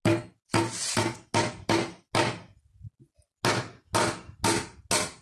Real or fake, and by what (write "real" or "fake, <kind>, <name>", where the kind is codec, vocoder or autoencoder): real